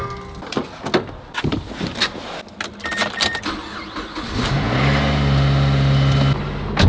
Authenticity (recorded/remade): recorded